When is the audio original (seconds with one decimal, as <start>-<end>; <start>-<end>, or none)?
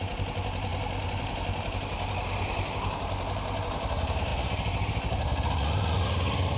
0.0-6.6